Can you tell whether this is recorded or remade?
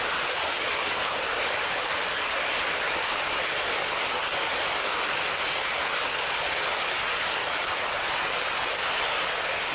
recorded